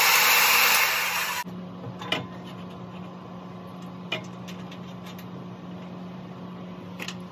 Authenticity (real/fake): real